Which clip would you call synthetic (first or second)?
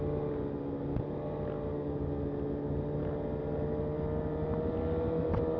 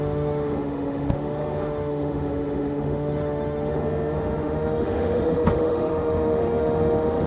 second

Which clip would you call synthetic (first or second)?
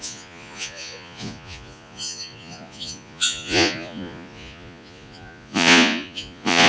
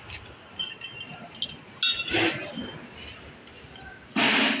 first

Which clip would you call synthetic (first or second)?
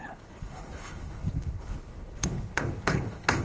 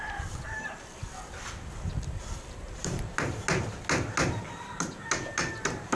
first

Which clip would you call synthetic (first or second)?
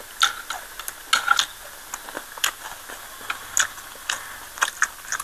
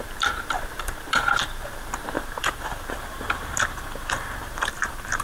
second